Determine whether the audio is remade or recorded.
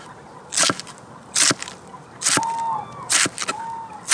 recorded